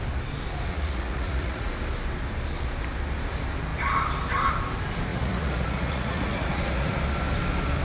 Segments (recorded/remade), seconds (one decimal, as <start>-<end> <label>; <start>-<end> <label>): 0.0-0.7 recorded; 0.7-1.7 remade; 1.7-5.1 recorded; 5.1-7.0 remade; 7.0-7.8 recorded